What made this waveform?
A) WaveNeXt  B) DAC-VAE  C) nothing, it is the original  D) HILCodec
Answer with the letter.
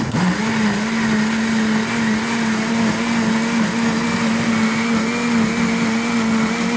C